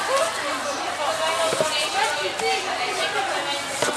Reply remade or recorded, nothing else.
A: recorded